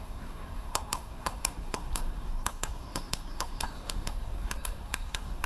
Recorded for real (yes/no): no